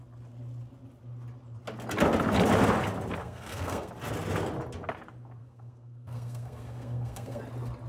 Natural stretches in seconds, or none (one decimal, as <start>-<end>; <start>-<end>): 0.0-3.2; 3.9-5.4; 7.4-7.9